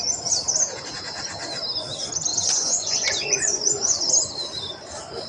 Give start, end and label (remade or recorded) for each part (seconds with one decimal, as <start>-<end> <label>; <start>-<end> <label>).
0.0-2.3 recorded; 2.3-4.0 remade; 4.0-5.3 recorded